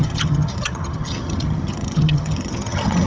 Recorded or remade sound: remade